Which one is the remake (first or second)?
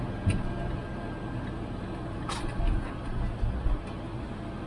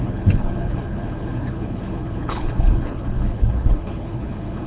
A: second